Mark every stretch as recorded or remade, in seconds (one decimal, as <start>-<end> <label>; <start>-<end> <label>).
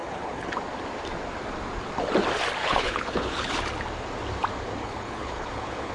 0.0-0.5 remade; 0.5-2.6 recorded; 2.6-3.6 remade; 3.6-4.8 recorded; 4.8-5.9 remade